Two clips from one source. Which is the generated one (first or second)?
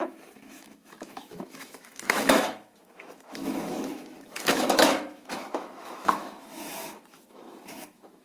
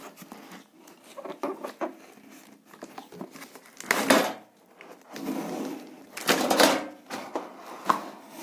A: first